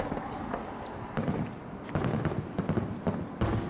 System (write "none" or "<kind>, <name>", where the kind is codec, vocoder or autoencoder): none